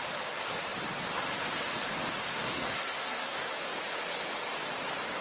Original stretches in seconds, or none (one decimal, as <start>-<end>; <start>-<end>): 0.0-2.3; 3.5-5.2